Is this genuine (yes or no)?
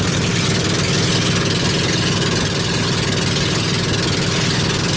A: yes